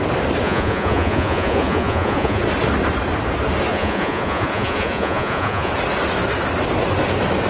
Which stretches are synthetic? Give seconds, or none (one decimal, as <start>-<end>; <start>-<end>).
0.4-2.4; 3.7-5.7